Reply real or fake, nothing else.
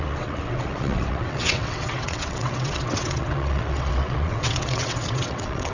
fake